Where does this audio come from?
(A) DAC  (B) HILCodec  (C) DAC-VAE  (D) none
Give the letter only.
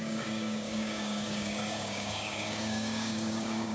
A